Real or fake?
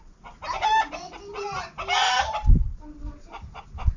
real